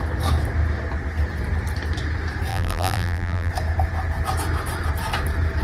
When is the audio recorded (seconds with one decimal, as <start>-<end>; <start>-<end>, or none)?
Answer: 0.0-2.5; 3.5-5.6